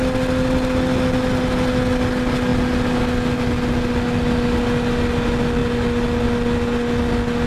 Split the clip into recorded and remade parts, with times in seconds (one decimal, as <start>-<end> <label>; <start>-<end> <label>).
0.0-7.5 recorded